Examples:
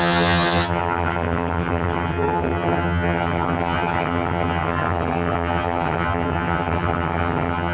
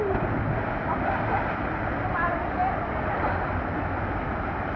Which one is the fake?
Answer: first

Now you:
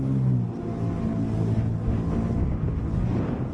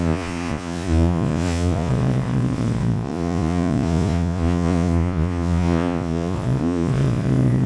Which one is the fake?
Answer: second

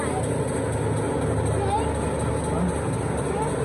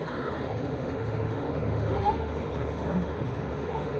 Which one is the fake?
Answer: second